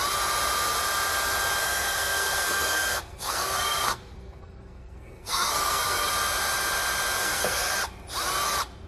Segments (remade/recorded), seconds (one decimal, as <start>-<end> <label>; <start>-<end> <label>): 0.0-1.6 recorded; 1.6-6.1 remade; 6.1-7.2 recorded; 7.2-7.7 remade; 7.7-8.9 recorded